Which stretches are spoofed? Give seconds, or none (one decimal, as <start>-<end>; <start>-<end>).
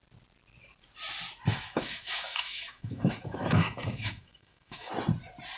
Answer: 1.5-4.9